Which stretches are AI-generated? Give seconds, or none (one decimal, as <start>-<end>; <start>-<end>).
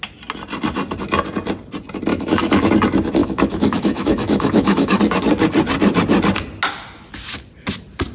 2.1-2.7; 3.2-5.0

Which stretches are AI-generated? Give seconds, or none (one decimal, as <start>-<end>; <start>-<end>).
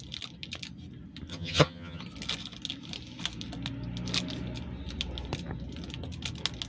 1.3-2.0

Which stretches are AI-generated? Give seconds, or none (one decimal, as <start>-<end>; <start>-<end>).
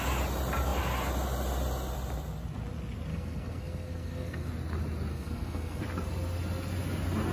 3.1-4.5; 5.1-5.8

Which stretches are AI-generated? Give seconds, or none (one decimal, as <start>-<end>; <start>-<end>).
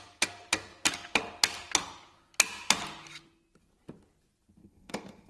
4.6-5.3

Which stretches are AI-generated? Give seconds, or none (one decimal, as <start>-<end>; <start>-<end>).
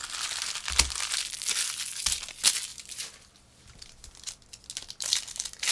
none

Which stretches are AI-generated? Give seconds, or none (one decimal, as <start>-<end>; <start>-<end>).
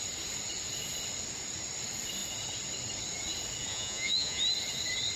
3.7-4.4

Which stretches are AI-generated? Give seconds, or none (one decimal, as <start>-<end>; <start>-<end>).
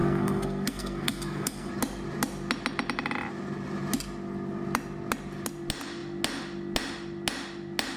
0.0-1.7